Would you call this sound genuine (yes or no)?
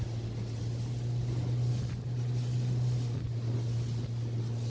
yes